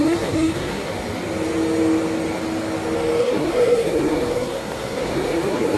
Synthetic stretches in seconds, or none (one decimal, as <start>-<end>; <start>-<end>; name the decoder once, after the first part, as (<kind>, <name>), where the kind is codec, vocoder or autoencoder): 0.0-0.9 (codec, SNAC); 3.2-5.8